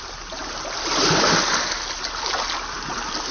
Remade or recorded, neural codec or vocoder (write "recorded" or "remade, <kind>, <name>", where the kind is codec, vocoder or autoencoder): recorded